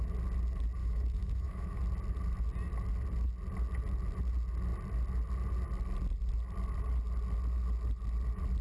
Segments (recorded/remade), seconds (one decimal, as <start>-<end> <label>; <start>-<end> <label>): 0.0-0.8 recorded; 0.8-1.8 remade; 1.8-8.6 recorded